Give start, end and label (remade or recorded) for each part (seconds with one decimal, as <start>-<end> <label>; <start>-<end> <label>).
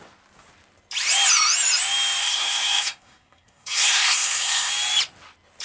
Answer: 0.0-2.2 recorded; 2.2-4.7 remade; 4.7-5.6 recorded